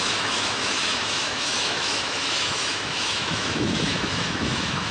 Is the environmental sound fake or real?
fake